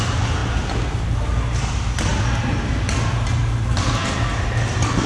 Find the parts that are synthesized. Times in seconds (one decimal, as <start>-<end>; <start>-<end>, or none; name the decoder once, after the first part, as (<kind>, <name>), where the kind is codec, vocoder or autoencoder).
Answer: none